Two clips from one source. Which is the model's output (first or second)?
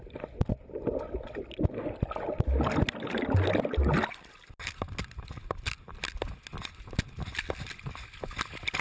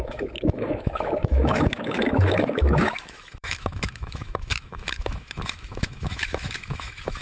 second